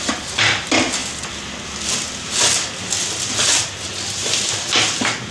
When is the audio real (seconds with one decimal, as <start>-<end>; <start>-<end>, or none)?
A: 0.0-5.3